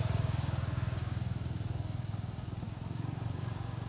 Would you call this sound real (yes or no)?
no